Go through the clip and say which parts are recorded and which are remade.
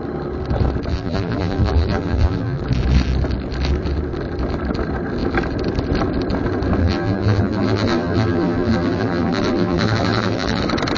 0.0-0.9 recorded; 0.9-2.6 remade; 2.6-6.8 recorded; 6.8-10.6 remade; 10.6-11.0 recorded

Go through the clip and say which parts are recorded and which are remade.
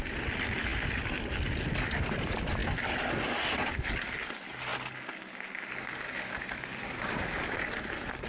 0.0-8.3 recorded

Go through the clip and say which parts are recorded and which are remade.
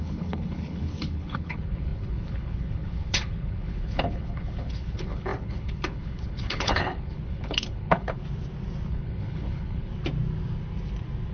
0.0-8.2 remade; 8.2-8.9 recorded; 8.9-9.9 remade; 9.9-11.3 recorded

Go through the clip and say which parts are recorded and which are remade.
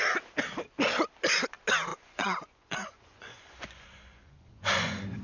0.0-1.9 recorded; 1.9-5.2 remade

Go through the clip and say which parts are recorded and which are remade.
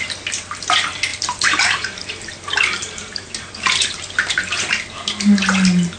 0.0-1.1 recorded; 1.1-4.7 remade; 4.7-6.0 recorded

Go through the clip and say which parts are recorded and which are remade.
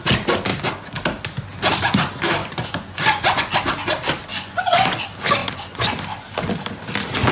0.0-2.4 recorded; 2.4-3.5 remade; 3.5-4.3 recorded; 4.3-5.0 remade; 5.0-5.4 recorded; 5.4-6.0 remade; 6.0-7.3 recorded